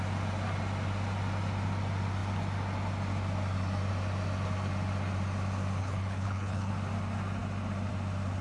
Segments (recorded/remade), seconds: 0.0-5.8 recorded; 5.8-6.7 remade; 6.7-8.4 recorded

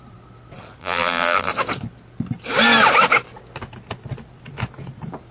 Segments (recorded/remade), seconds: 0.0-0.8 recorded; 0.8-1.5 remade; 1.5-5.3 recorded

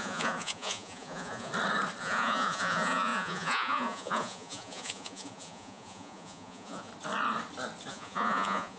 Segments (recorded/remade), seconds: 0.0-1.5 remade; 1.5-2.0 recorded; 2.0-6.9 remade; 6.9-7.9 recorded; 7.9-8.8 remade

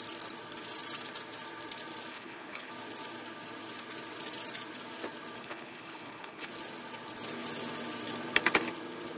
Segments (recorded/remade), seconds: 0.0-2.1 recorded; 2.1-2.7 remade; 2.7-5.4 recorded; 5.4-6.5 remade; 6.5-9.2 recorded